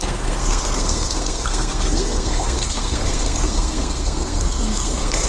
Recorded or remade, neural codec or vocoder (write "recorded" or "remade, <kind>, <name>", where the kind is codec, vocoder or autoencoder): remade, codec, SNAC